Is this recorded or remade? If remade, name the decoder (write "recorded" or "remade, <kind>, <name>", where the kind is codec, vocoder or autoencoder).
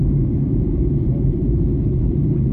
remade, vocoder, BigVGAN v2